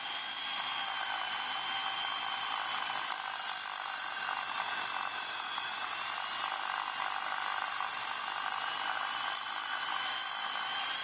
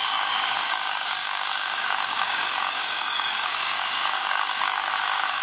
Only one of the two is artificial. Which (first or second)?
second